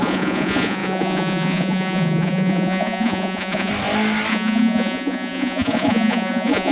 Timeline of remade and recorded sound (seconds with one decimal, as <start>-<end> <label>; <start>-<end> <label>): 0.0-3.7 remade; 3.7-4.3 recorded; 4.3-6.7 remade

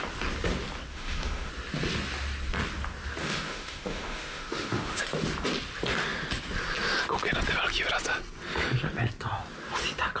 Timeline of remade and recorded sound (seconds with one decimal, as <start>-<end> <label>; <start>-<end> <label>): 0.0-0.9 recorded; 0.9-1.5 remade; 1.5-3.2 recorded; 3.2-5.0 remade; 5.0-10.2 recorded

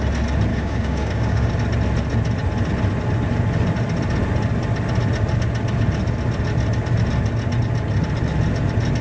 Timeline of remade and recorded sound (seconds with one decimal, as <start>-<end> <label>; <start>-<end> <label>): 0.0-0.5 recorded; 0.5-1.5 remade; 1.5-9.0 recorded

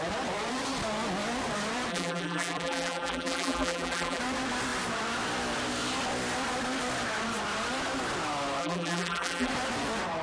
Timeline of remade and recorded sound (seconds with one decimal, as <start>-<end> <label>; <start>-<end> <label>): 0.0-1.9 recorded; 1.9-4.2 remade; 4.2-8.6 recorded; 8.6-9.5 remade; 9.5-10.2 recorded

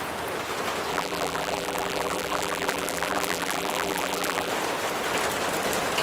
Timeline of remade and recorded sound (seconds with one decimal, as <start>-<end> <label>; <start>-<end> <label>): 0.0-0.9 recorded; 0.9-4.5 remade; 4.5-6.0 recorded

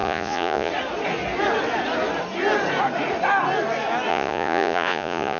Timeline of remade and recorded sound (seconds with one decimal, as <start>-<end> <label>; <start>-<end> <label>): 0.0-0.7 remade; 0.7-4.1 recorded; 4.1-5.4 remade

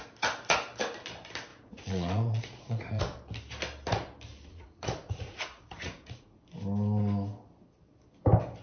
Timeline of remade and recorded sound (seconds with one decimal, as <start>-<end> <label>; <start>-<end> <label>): 0.0-1.5 recorded; 1.5-3.0 remade; 3.0-4.5 recorded; 4.5-6.4 remade; 6.4-8.6 recorded